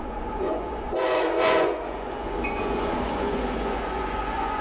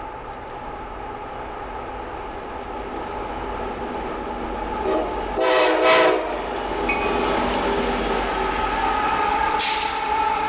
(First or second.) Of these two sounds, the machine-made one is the first